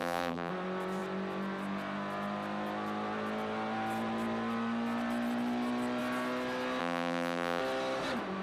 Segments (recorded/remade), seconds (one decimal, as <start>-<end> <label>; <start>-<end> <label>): 0.0-0.5 remade; 0.5-6.8 recorded; 6.8-7.6 remade; 7.6-8.4 recorded